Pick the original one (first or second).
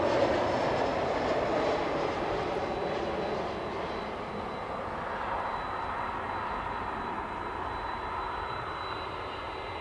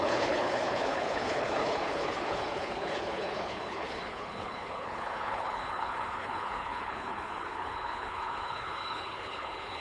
first